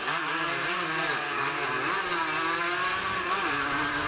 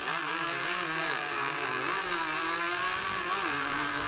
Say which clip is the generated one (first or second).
second